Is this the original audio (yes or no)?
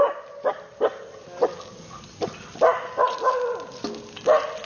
yes